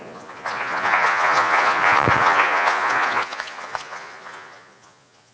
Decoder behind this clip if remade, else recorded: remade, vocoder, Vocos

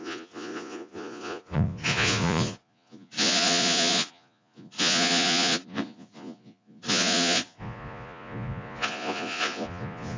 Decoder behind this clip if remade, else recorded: remade, vocoder, Vocos